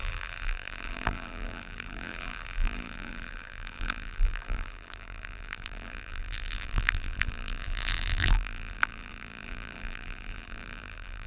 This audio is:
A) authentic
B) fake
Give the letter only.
B